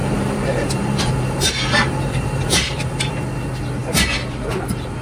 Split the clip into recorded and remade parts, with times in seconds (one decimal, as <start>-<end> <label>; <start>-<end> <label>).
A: 0.0-3.0 remade; 3.0-5.0 recorded